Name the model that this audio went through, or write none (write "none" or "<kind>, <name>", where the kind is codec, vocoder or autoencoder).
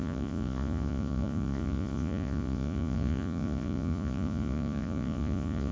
vocoder, Vocos